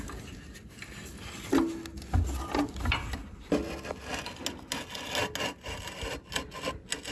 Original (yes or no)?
yes